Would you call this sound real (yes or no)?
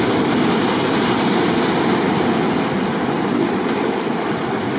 yes